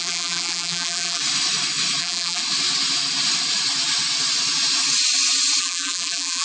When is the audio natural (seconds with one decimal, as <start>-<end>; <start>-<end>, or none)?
1.2-2.0; 2.4-5.6